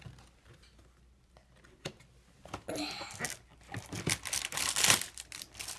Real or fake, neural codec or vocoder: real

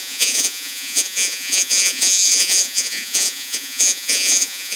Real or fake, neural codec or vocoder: fake, vocoder, Vocos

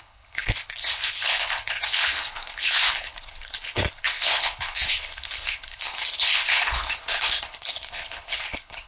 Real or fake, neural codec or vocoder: fake, codec, HILCodec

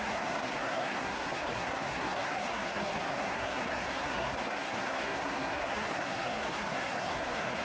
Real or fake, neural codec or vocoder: fake, codec, SNAC